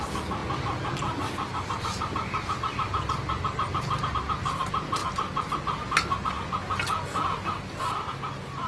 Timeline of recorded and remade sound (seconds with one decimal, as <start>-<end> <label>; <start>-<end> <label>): 0.0-8.7 recorded